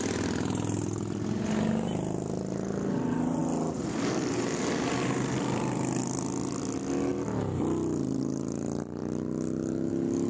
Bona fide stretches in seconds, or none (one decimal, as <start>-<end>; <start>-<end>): 0.0-10.3